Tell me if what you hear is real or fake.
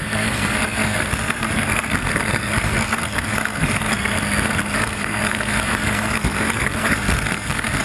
fake